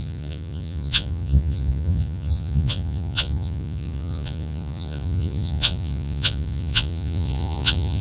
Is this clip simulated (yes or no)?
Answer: yes